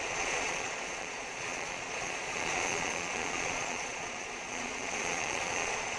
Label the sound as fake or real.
fake